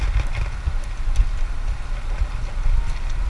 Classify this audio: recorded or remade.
recorded